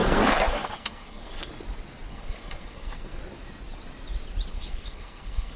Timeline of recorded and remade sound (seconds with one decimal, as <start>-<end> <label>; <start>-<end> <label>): 0.0-1.5 remade; 1.5-2.1 recorded; 2.1-3.2 remade; 3.2-4.5 recorded; 4.5-5.6 remade